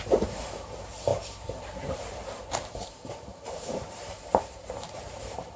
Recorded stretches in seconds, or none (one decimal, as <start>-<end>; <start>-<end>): none

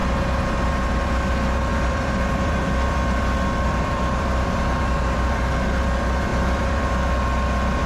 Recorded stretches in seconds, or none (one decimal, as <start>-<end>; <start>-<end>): 0.0-1.7; 5.6-6.3; 6.9-7.9

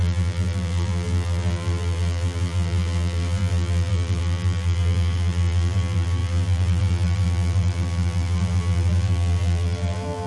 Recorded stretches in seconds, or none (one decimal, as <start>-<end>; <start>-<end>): none

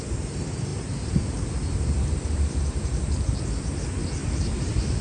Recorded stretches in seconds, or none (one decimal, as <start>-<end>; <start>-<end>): 0.0-0.7; 3.6-4.2

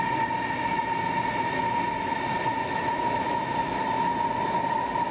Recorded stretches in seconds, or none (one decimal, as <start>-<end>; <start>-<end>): 0.0-5.1

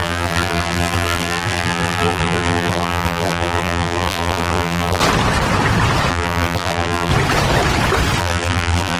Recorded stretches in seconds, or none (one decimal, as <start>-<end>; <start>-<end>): 5.0-6.1; 7.1-8.2

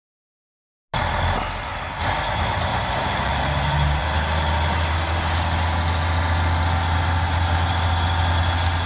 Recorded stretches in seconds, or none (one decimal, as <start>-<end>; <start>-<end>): 0.0-2.7; 4.0-8.9

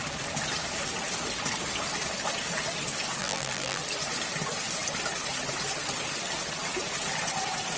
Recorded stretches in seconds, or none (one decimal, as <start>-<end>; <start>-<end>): 0.0-3.2; 3.8-7.8